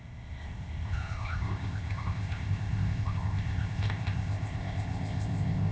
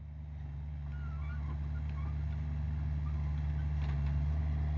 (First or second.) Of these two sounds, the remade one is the first